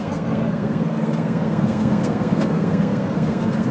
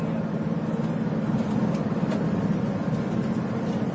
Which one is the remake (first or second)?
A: first